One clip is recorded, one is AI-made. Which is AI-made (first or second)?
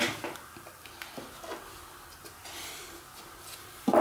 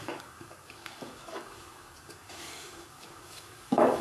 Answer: second